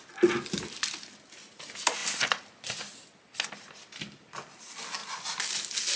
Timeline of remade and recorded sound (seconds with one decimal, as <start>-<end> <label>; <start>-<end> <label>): 0.0-6.0 recorded